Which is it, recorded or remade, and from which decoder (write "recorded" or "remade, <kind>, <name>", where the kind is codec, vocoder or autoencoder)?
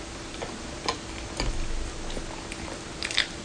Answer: recorded